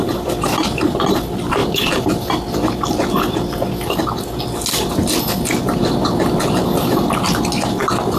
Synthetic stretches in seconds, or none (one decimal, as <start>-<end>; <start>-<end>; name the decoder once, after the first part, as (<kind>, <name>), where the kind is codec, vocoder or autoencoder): none